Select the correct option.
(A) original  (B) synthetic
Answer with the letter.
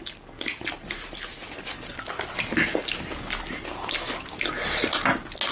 A